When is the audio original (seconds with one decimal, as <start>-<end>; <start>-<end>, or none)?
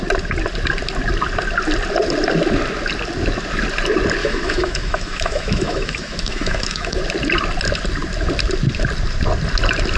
0.0-4.2; 7.0-10.0